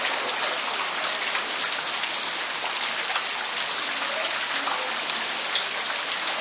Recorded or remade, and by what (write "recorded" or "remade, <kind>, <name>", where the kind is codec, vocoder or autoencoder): recorded